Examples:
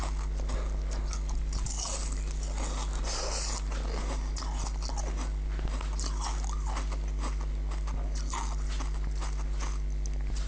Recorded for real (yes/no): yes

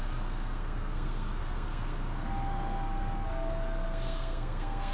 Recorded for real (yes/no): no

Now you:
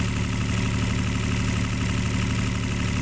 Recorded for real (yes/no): yes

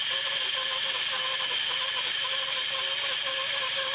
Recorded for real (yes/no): yes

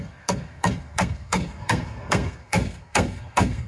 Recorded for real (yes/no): no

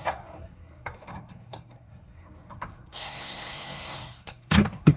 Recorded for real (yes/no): no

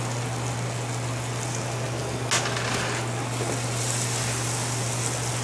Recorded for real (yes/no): yes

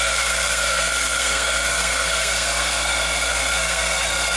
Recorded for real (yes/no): no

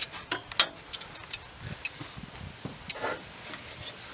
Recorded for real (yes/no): yes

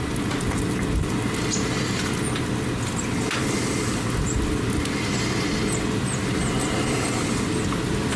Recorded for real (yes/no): yes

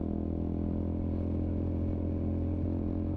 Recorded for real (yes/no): yes